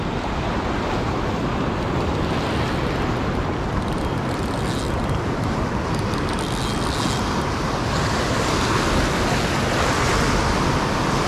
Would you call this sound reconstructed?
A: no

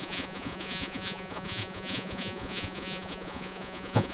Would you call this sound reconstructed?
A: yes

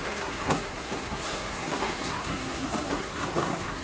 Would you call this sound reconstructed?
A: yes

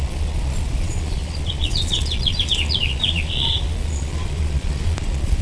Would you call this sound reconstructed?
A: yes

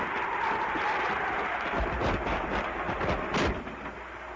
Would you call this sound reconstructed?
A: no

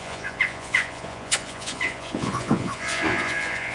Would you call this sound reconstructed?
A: yes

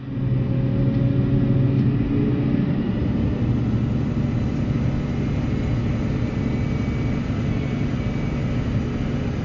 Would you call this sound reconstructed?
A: no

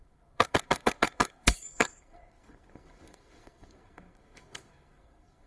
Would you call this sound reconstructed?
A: yes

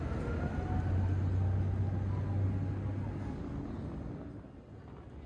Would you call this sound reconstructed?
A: no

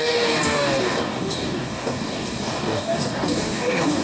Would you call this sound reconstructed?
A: yes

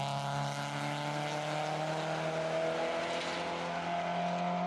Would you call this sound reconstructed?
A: no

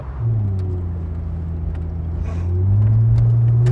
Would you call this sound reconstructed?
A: no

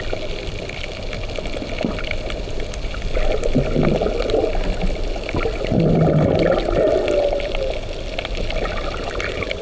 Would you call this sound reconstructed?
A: no